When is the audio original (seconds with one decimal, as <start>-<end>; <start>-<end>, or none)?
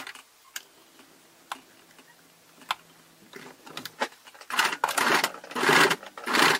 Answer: 0.0-6.6